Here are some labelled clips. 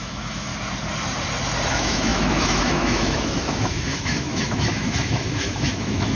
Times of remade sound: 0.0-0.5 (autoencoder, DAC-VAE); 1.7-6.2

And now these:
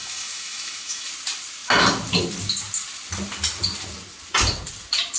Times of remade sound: 0.0-1.1 (autoencoder, DAC-VAE)